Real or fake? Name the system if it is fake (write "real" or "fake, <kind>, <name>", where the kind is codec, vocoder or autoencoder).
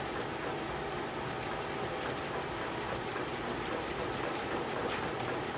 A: real